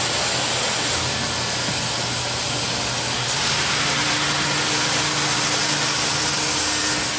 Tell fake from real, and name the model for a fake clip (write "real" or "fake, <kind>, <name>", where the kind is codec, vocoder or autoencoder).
real